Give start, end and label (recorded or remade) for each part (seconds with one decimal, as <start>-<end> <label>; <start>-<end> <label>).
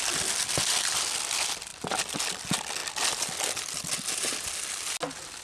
0.0-5.4 recorded